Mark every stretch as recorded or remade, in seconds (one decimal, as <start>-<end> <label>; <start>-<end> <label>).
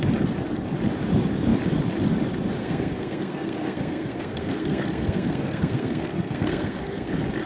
0.0-2.6 recorded; 2.6-7.1 remade; 7.1-7.5 recorded